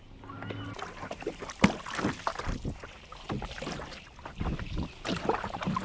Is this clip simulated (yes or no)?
no